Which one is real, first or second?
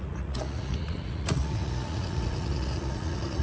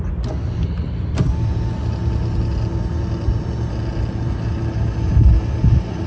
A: second